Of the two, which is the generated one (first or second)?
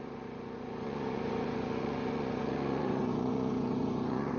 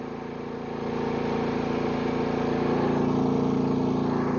first